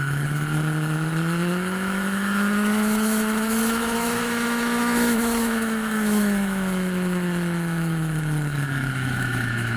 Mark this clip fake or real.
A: fake